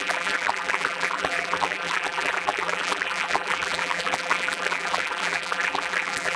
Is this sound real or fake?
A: fake